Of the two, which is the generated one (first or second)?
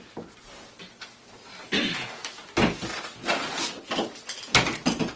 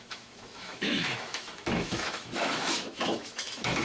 second